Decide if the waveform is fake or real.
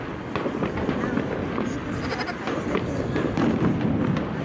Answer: real